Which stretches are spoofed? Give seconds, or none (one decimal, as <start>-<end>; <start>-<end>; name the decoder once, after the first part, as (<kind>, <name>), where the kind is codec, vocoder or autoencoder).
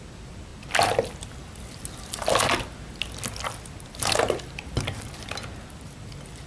none